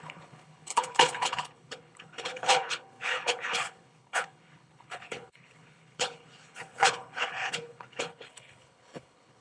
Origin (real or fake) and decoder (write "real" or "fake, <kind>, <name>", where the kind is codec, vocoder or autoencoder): fake, codec, HILCodec